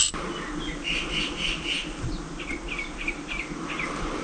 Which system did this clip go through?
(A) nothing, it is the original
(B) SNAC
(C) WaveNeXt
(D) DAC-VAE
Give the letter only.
A